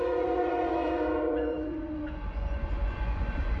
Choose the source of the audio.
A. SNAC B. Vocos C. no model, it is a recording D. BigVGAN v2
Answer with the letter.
B